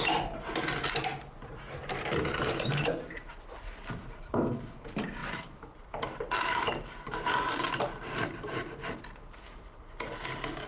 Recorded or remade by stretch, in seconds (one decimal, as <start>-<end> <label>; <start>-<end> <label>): 0.0-1.8 recorded; 1.8-3.3 remade; 3.3-5.2 recorded; 5.2-9.0 remade; 9.0-10.7 recorded